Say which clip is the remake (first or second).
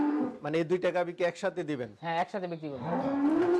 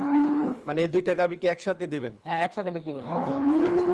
second